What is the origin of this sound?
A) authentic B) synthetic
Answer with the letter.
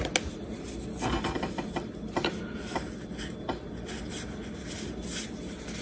A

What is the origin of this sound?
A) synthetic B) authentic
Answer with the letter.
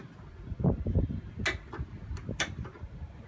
B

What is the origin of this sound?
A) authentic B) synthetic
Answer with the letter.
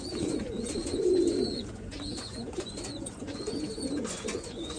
B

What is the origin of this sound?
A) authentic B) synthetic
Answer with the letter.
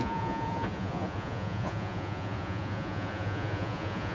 B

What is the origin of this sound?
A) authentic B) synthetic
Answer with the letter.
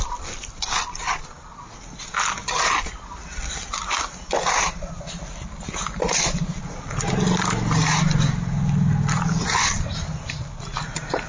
A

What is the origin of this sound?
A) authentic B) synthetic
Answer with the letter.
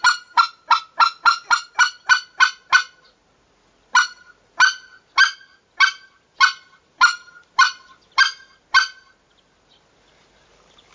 A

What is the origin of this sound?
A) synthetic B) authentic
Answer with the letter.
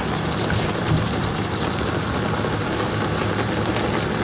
B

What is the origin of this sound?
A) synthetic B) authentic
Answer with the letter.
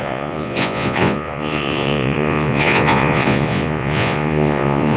A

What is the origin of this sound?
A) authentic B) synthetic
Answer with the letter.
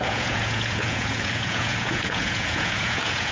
B